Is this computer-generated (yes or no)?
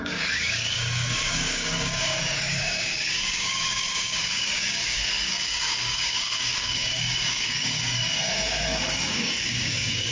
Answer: yes